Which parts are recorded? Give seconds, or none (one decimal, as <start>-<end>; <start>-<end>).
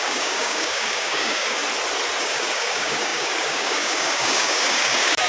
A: 1.6-2.2